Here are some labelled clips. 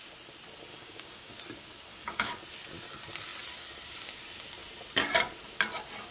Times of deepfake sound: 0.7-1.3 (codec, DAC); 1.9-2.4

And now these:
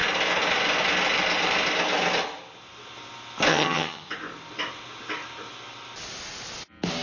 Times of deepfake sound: 3.5-4.1 (vocoder, HiFi-GAN)

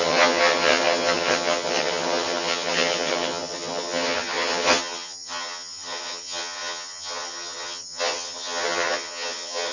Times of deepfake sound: 0.0-9.7 (vocoder, HiFi-GAN)

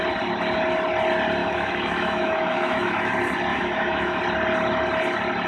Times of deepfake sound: 1.4-3.1 (autoencoder, DAC-VAE); 3.5-4.2